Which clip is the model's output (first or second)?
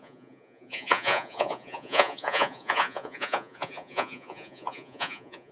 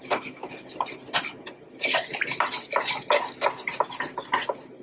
first